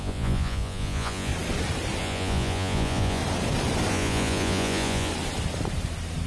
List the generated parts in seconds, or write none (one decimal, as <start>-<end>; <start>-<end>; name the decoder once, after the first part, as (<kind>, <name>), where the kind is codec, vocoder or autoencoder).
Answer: 0.0-1.3 (vocoder, Vocos); 2.0-3.2; 3.9-5.1